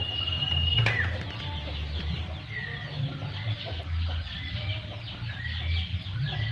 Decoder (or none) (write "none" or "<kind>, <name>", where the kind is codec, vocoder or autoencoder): none